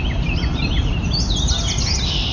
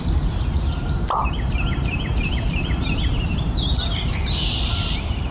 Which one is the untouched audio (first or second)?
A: first